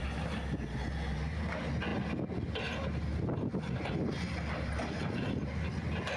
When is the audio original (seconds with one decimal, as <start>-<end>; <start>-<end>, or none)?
0.0-6.2